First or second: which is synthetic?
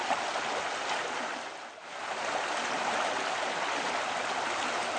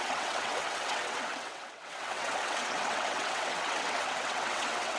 second